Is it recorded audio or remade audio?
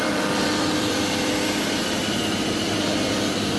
remade